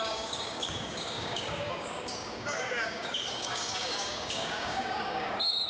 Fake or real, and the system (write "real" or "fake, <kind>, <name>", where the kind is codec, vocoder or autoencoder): fake, codec, DAC